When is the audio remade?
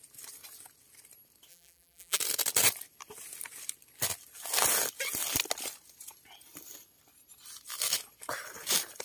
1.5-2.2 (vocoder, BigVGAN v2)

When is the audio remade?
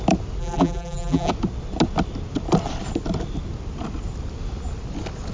0.4-1.3 (vocoder, BigVGAN v2)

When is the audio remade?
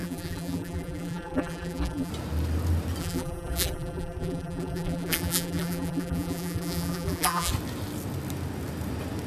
0.0-2.1 (vocoder, BigVGAN v2); 3.0-7.5